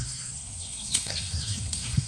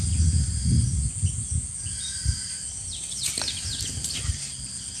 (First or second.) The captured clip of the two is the second